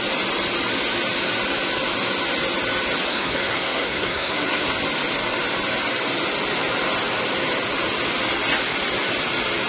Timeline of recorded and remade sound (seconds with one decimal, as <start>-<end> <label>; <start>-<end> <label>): 0.0-3.1 recorded; 3.1-4.7 remade; 4.7-9.7 recorded